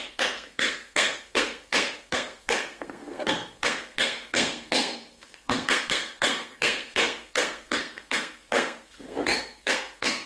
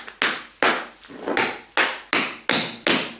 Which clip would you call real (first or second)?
second